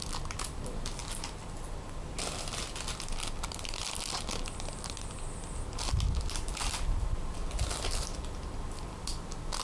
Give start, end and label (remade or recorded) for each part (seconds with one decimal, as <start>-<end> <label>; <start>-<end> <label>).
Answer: 0.0-9.6 recorded